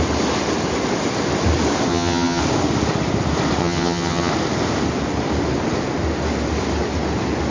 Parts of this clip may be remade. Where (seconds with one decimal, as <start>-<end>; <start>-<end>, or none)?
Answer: 1.9-2.4; 3.6-4.3